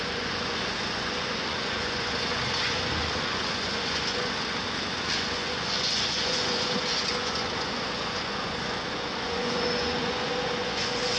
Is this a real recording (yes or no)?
no